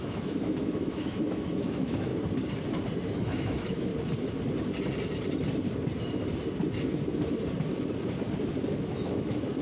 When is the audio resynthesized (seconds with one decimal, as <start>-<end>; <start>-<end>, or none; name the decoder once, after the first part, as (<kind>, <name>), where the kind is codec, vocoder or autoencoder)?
0.0-2.1 (autoencoder, DAC-VAE); 3.1-3.9; 8.8-9.6